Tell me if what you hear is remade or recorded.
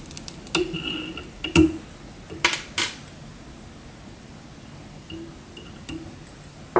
recorded